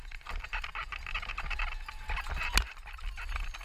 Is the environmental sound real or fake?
real